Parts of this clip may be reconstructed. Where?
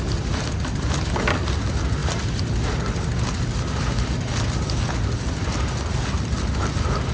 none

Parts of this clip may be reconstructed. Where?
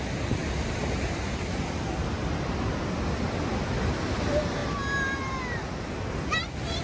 none